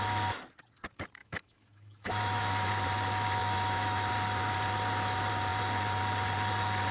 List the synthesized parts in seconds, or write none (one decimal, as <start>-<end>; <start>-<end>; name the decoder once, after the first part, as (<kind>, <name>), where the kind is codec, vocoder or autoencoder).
1.2-2.7 (autoencoder, DAC-VAE); 3.4-4.1

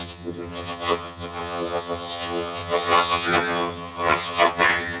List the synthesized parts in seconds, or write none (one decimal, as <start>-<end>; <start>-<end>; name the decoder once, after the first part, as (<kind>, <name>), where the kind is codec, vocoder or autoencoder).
0.0-5.0 (vocoder, HiFi-GAN)